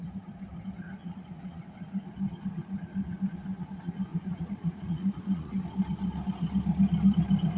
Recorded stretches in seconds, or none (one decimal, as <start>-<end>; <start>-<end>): 0.0-1.0; 1.7-4.1; 5.6-7.6